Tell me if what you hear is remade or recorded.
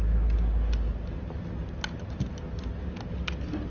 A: recorded